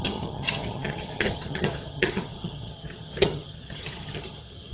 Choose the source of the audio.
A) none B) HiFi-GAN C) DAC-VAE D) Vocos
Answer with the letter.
B